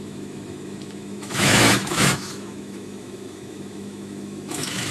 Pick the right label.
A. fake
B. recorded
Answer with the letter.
A